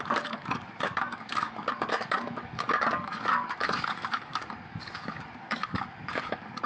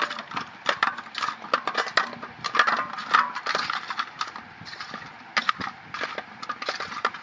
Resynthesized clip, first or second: first